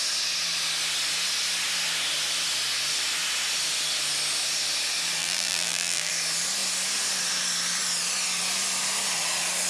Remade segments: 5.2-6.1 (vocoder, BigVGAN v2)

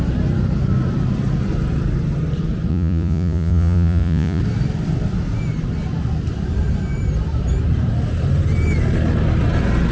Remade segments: 2.7-4.4 (vocoder, Vocos)

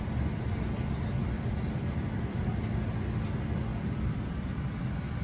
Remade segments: 1.2-2.5 (vocoder, BigVGAN v2); 3.7-4.8

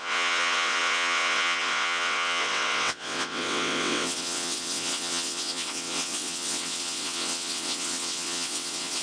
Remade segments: 0.0-9.0 (vocoder, WaveNeXt)

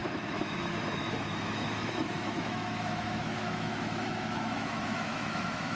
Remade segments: 0.0-5.8 (autoencoder, DAC-VAE)

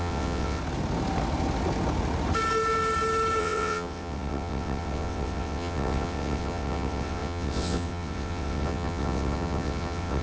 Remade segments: 0.0-0.6 (vocoder, WaveNeXt); 3.4-10.2

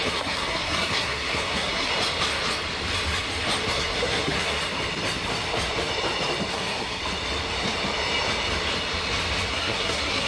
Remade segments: 0.0-1.9 (codec, SNAC); 3.7-4.6; 6.5-7.0; 9.5-10.3

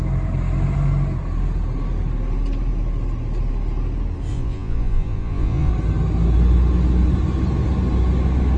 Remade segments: 4.3-5.7 (vocoder, Vocos)